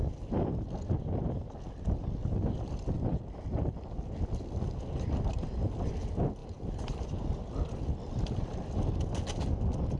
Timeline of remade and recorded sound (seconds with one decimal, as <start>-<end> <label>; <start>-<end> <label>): 0.0-6.4 recorded; 6.4-7.5 remade; 7.5-10.0 recorded